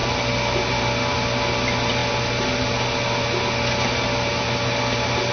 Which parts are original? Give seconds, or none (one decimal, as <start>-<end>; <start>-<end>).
0.0-5.3